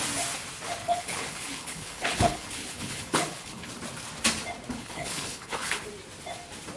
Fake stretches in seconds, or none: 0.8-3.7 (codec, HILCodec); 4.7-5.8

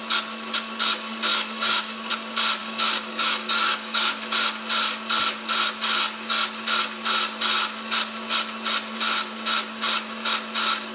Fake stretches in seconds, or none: 1.3-2.1 (codec, DAC); 2.6-4.1

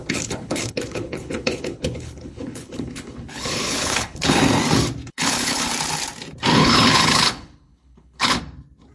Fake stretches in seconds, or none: 0.0-4.4 (codec, HILCodec); 5.1-5.7; 6.5-8.4

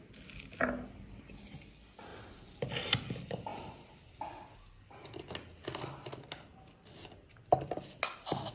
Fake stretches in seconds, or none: none

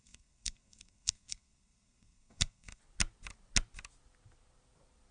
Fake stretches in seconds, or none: 0.0-2.8 (codec, SNAC)